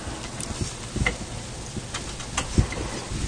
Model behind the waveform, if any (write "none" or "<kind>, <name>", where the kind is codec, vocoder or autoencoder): none